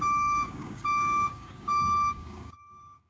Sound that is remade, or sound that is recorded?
remade